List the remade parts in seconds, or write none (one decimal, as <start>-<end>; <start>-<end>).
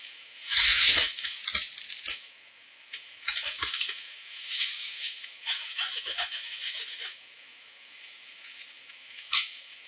0.0-1.4; 2.1-9.9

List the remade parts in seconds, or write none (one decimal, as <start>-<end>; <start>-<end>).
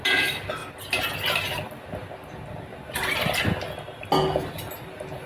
none